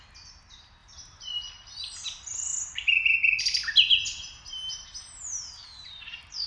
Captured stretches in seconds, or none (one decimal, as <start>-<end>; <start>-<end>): 0.0-0.8; 1.3-2.5; 3.4-6.5